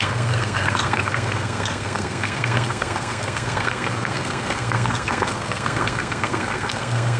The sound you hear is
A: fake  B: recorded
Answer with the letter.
A